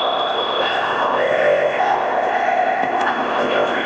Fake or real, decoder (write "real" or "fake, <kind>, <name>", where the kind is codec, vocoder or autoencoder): fake, codec, ZipCodec